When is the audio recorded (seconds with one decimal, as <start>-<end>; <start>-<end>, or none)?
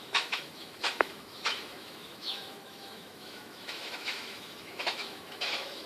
none